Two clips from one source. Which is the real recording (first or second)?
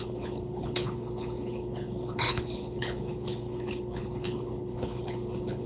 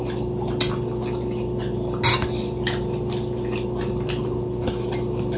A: second